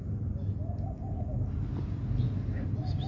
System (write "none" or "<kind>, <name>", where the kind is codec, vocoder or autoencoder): none